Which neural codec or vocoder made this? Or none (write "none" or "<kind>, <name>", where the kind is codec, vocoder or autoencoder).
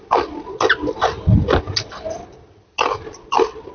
none